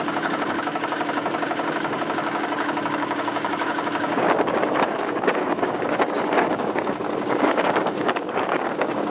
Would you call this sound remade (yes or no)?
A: yes